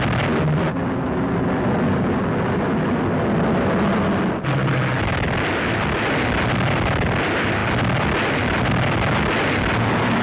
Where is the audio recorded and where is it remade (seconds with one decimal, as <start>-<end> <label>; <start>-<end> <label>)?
0.0-10.2 recorded